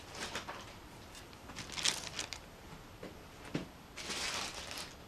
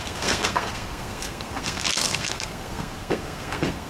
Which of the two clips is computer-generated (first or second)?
second